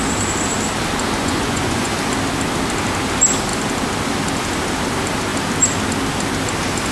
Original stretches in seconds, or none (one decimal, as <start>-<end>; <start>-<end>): 0.0-1.2; 1.9-6.9